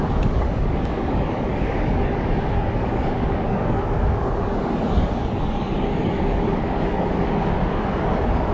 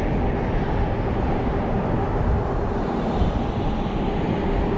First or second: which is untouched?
second